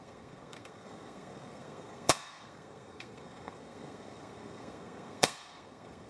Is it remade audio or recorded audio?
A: remade